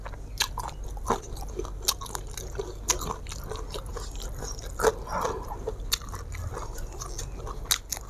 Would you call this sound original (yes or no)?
yes